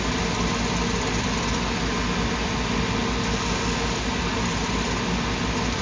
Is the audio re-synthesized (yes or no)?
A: no